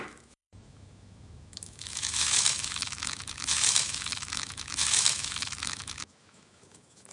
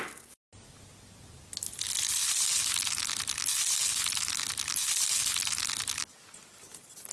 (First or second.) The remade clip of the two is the first